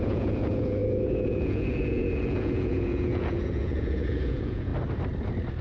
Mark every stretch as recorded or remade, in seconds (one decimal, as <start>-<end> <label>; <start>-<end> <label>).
0.0-4.7 remade; 4.7-5.6 recorded